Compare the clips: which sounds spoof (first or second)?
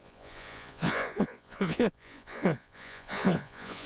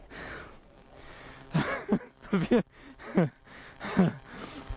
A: first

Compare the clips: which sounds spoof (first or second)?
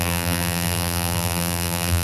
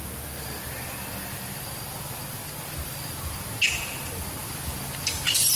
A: first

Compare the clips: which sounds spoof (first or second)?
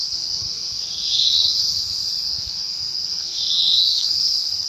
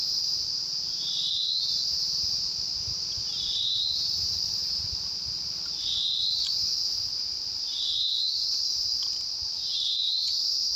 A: first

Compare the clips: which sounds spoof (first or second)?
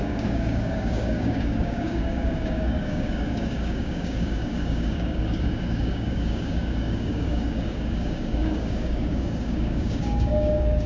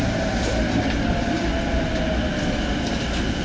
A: first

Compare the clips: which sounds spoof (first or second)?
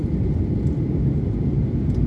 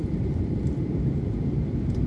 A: second